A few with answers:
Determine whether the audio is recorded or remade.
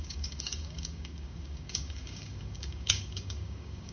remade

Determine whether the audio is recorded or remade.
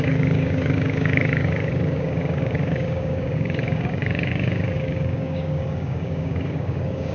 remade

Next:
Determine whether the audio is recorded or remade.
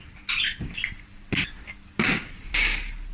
recorded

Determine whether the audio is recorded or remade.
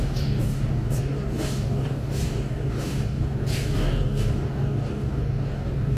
remade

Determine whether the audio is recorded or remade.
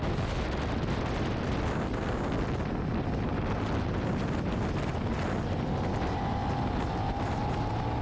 recorded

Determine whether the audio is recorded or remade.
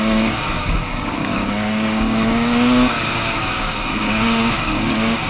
remade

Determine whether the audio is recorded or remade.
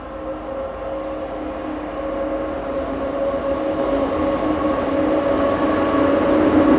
recorded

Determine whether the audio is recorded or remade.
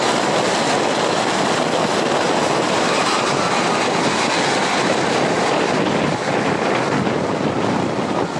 recorded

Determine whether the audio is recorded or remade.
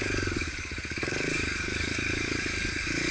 remade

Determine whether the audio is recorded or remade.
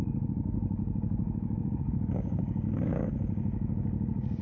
remade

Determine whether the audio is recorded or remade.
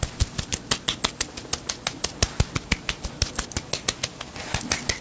recorded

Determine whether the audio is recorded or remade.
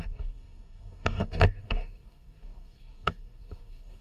remade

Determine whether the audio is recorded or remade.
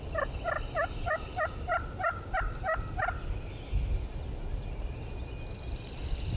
recorded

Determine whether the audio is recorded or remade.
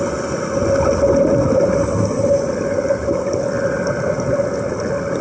recorded